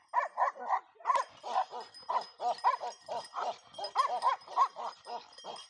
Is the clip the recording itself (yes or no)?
yes